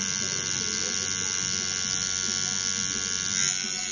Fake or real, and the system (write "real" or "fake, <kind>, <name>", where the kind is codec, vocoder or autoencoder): real